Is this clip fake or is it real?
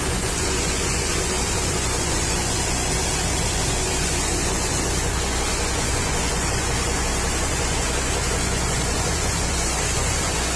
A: fake